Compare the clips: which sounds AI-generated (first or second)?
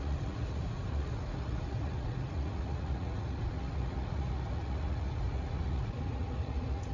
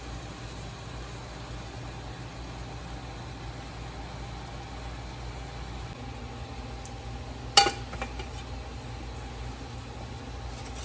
first